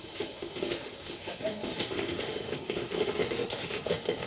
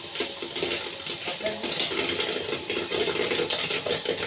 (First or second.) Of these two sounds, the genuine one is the second